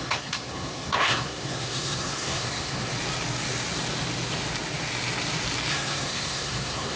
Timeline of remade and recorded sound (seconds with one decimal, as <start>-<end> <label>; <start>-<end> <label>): 0.0-2.9 remade; 2.9-5.7 recorded; 5.7-7.0 remade